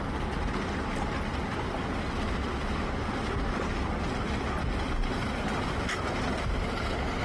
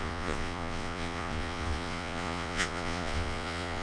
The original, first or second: first